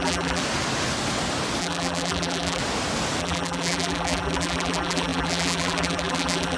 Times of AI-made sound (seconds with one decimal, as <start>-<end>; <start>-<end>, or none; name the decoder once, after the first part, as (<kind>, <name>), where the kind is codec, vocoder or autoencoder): 0.0-0.4 (vocoder, BigVGAN v2); 1.6-2.6; 3.2-6.6